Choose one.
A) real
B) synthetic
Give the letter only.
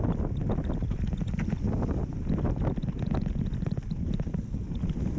A